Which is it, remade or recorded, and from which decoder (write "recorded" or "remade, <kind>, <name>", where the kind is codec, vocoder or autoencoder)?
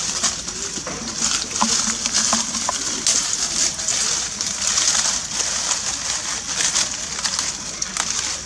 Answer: recorded